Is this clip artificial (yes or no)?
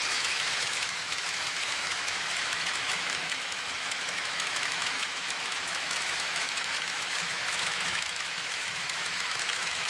yes